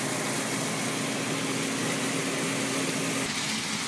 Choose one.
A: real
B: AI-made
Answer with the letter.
A